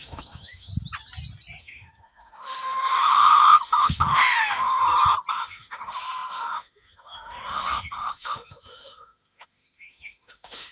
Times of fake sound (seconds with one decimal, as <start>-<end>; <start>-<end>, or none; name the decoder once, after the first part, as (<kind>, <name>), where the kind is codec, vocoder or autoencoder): 0.0-0.7 (autoencoder, DAC-VAE); 1.6-4.8; 5.3-10.7